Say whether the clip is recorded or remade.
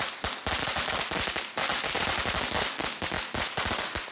recorded